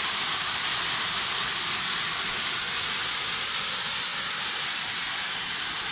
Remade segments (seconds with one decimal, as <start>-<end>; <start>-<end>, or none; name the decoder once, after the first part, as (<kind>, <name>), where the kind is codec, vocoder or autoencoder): none